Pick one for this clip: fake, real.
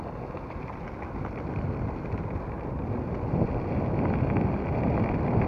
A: real